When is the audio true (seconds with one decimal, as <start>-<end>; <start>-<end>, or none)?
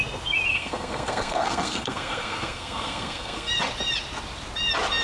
0.0-0.5; 3.5-5.0